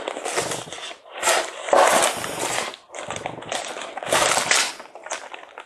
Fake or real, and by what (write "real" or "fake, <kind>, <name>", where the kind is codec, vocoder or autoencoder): fake, vocoder, BigVGAN v2